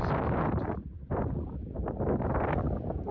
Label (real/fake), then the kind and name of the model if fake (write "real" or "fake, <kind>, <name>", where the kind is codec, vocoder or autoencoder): real